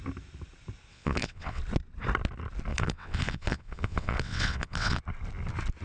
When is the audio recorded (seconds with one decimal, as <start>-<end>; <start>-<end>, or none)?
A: 0.0-0.9; 1.6-2.7; 5.0-5.8